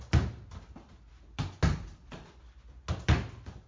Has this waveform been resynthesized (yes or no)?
no